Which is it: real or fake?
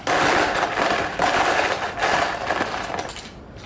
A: real